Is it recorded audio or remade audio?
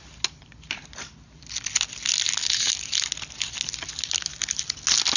recorded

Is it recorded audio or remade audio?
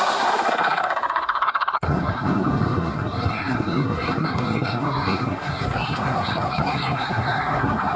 remade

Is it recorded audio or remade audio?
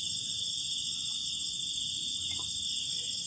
recorded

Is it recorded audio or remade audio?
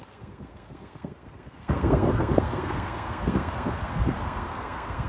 remade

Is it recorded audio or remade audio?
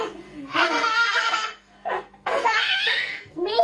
remade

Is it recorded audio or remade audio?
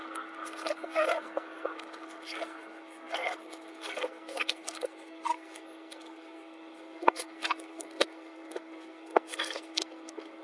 remade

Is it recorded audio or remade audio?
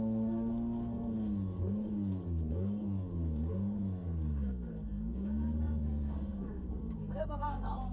remade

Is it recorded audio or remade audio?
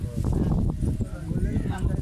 recorded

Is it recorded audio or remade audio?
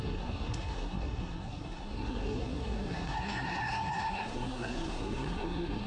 remade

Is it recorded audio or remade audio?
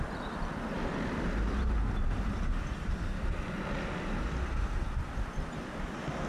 recorded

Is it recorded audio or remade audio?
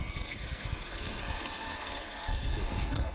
remade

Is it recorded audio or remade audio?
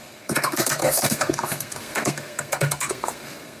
remade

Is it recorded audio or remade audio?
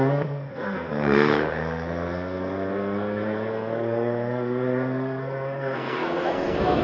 remade